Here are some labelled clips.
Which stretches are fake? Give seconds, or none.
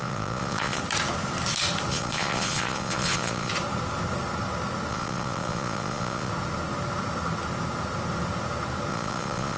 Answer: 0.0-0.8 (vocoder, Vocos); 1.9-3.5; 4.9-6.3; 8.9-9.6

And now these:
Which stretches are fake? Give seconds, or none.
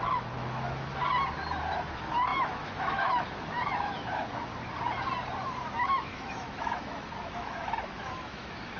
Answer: 0.0-0.9 (autoencoder, DAC-VAE); 1.9-4.5; 5.8-8.8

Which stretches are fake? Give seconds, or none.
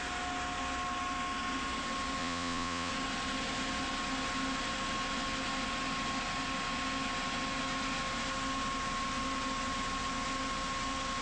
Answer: 2.2-2.9 (vocoder, Vocos)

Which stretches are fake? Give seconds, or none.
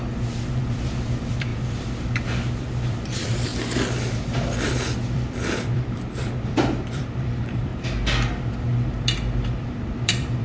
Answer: 0.0-3.5 (vocoder, BigVGAN v2); 4.6-7.7; 8.5-10.4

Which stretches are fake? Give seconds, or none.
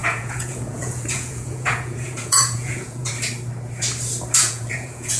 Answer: 0.0-3.1 (vocoder, Vocos); 4.4-5.2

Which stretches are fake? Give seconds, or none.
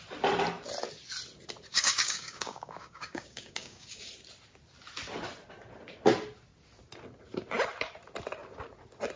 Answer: 1.7-4.1 (codec, DAC)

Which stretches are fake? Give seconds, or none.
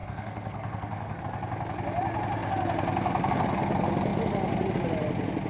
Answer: 0.0-1.2 (codec, SNAC)